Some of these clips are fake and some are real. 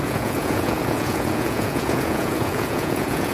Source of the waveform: fake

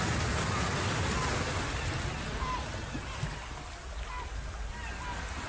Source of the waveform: real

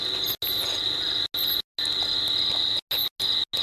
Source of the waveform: real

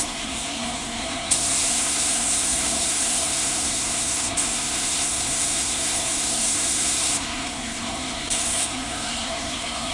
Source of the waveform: fake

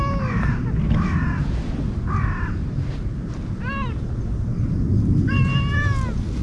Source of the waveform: real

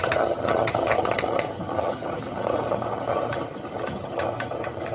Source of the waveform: fake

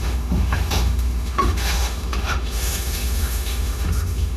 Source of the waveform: fake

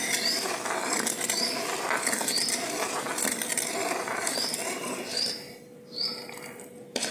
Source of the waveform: fake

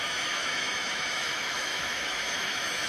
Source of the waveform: fake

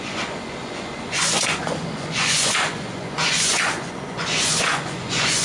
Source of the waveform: fake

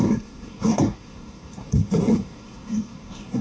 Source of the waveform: fake